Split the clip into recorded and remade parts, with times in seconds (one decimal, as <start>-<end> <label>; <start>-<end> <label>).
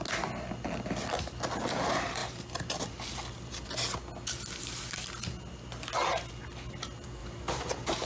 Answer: 0.0-2.2 recorded; 2.2-3.0 remade; 3.0-7.2 recorded; 7.2-8.1 remade